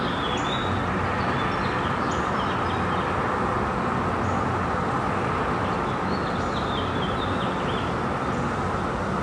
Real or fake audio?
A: real